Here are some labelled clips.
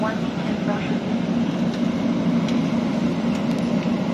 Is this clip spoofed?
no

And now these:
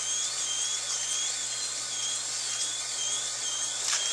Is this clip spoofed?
no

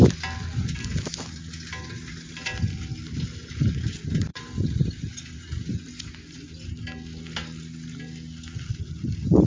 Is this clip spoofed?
no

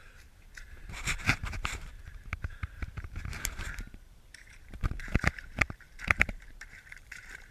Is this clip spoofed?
yes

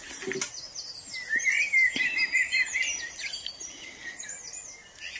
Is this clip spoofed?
no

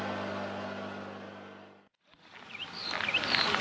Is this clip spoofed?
no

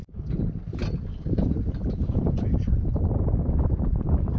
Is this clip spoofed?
yes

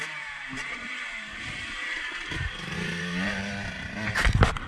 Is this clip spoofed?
yes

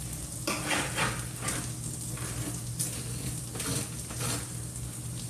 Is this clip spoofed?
no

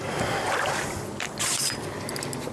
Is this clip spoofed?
no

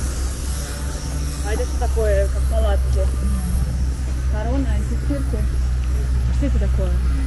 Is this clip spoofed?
no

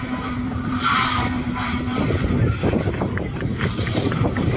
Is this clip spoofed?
yes